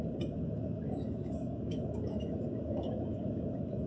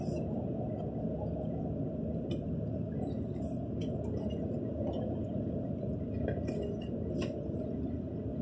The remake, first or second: first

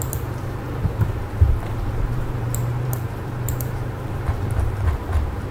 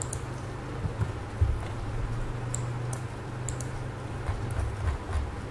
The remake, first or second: first